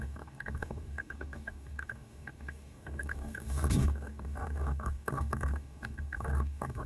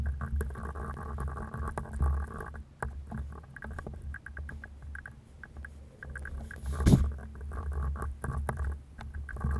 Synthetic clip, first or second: first